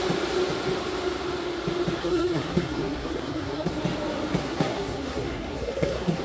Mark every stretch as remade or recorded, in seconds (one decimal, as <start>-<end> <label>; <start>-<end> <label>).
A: 0.0-2.0 recorded; 2.0-3.7 remade; 3.7-4.4 recorded; 4.4-6.2 remade